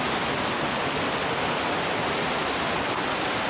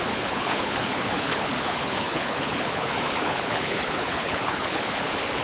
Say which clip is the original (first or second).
first